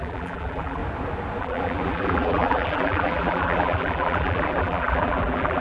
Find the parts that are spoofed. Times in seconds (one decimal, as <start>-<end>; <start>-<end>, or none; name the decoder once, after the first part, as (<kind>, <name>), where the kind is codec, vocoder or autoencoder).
0.0-0.8 (vocoder, BigVGAN v2); 1.4-5.6